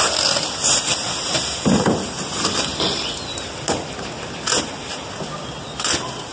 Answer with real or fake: real